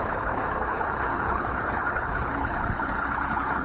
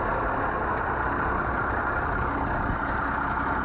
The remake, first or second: first